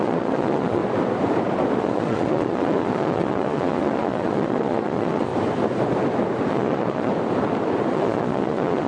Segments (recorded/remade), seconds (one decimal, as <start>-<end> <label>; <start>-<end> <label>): 0.0-0.8 remade; 0.8-1.8 recorded; 1.8-5.3 remade; 5.3-6.5 recorded; 6.5-7.1 remade; 7.1-7.9 recorded; 7.9-8.9 remade